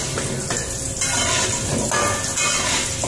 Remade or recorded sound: recorded